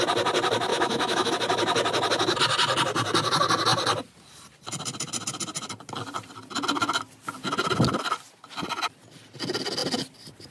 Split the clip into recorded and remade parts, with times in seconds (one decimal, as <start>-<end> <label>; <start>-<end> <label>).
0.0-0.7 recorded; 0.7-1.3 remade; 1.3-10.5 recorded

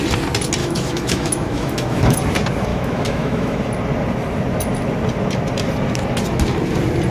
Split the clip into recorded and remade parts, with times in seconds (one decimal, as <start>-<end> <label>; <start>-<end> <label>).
0.0-0.6 recorded; 0.6-2.2 remade; 2.2-2.7 recorded; 2.7-3.6 remade; 3.6-7.1 recorded

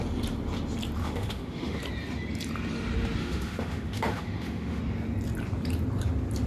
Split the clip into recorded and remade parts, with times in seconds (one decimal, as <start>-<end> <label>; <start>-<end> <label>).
0.0-1.0 recorded; 1.0-1.8 remade; 1.8-3.2 recorded; 3.2-4.8 remade; 4.8-6.5 recorded

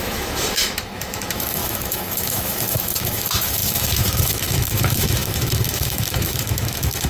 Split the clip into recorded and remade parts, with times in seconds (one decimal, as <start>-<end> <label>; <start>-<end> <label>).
0.0-7.1 remade

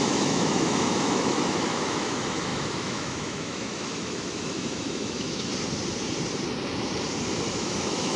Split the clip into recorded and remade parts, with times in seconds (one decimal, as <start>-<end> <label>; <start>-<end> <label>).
0.0-5.5 remade; 5.5-7.5 recorded; 7.5-8.2 remade

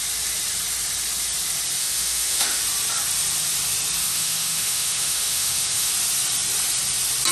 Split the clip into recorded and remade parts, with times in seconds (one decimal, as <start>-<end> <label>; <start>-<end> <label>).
0.0-1.8 recorded; 1.8-2.6 remade; 2.6-4.0 recorded; 4.0-5.9 remade; 5.9-7.3 recorded